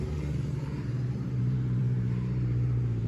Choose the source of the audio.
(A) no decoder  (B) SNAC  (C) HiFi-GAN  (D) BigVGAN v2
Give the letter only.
D